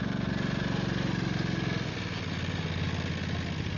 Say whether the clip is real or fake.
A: real